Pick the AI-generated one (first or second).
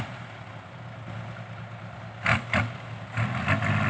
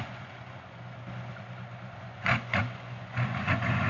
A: second